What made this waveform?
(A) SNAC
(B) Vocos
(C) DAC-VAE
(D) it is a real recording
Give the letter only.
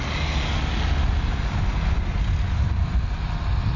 D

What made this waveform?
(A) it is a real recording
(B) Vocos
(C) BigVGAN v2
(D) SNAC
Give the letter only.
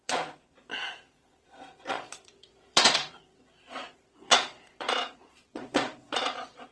B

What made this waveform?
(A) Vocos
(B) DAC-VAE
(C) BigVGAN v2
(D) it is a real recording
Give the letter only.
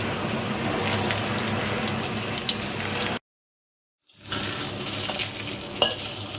D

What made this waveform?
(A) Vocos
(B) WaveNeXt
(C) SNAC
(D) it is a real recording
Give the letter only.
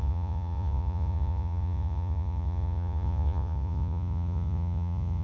A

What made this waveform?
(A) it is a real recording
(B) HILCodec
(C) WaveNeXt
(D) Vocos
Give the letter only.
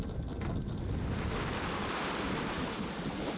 A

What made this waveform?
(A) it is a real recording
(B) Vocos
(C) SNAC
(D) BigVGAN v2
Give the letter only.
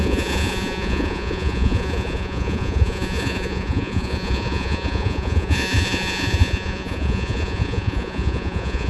B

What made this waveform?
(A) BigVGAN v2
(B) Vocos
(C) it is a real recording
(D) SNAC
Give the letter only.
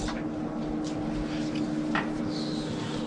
C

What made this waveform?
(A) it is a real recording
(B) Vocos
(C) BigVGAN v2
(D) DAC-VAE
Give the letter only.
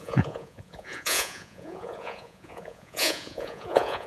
B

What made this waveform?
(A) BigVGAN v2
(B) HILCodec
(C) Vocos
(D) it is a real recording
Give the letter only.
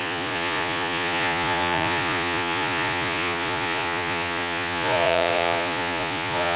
C